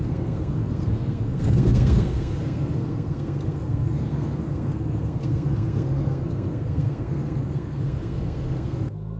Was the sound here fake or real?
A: fake